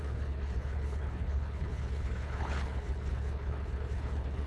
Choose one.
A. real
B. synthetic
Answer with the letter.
B